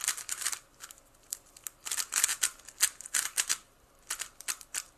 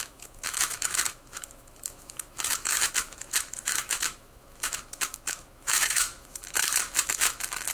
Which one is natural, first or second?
first